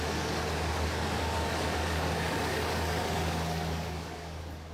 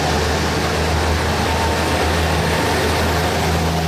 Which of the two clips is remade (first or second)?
first